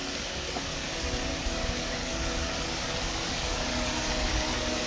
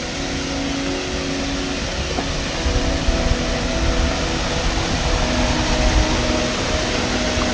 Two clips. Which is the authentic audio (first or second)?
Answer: second